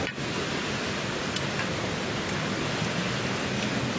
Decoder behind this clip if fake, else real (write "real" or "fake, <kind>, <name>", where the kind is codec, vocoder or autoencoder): real